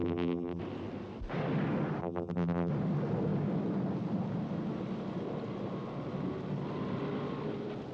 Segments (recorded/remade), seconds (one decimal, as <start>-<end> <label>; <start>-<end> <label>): 0.0-0.6 remade; 0.6-2.0 recorded; 2.0-2.7 remade; 2.7-7.9 recorded